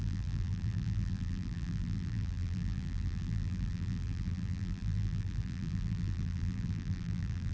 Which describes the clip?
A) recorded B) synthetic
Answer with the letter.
B